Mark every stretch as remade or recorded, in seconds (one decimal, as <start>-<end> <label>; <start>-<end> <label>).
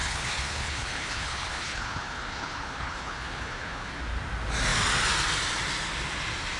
0.0-4.0 remade; 4.0-6.6 recorded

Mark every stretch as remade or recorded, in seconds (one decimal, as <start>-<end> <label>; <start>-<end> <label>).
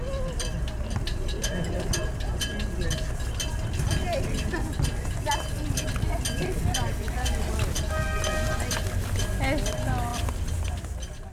0.0-11.3 recorded